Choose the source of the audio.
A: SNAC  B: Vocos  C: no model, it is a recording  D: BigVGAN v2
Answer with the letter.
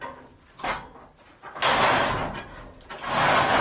C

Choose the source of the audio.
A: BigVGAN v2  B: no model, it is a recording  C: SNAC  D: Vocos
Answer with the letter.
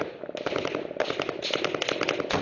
B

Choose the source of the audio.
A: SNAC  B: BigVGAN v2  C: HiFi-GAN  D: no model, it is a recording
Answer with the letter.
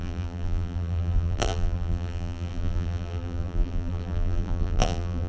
B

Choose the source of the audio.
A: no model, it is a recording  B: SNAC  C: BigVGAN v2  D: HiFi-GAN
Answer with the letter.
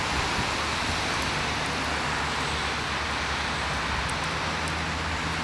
A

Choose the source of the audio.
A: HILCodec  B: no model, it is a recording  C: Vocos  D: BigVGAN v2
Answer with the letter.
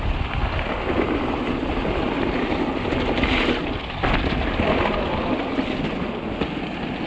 B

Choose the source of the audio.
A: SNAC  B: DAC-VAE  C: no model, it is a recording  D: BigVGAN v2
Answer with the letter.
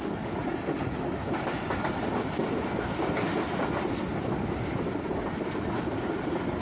C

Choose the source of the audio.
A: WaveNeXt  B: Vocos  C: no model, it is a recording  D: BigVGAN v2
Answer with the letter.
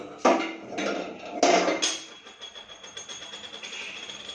C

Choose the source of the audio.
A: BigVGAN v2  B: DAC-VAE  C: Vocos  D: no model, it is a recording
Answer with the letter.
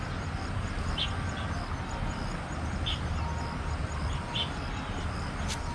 D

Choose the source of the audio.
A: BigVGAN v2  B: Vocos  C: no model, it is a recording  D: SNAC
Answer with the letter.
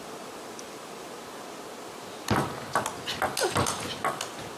C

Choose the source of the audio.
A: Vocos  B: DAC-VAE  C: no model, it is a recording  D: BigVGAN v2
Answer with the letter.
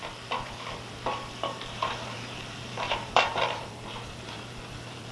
D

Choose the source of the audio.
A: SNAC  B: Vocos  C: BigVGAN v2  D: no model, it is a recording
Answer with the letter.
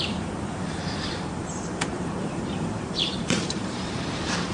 C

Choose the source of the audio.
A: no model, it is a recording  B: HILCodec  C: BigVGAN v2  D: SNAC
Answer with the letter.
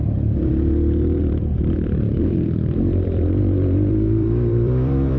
C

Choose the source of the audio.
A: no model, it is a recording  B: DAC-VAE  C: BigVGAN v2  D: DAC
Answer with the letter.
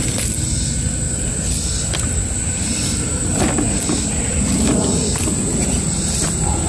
A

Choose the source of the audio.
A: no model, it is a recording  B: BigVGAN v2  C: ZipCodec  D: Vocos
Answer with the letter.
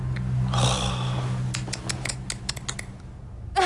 A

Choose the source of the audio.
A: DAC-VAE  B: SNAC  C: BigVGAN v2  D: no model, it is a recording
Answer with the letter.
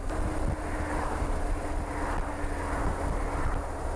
D